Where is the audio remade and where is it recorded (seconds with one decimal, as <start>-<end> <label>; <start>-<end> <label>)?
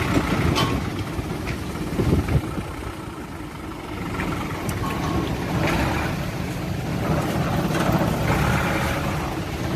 0.0-9.8 recorded